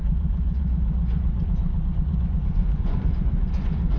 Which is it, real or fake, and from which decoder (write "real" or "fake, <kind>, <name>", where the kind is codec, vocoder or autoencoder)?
fake, vocoder, Vocos